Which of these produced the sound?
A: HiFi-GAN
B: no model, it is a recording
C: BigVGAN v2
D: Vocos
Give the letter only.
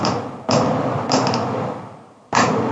B